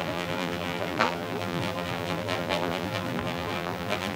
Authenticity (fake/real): fake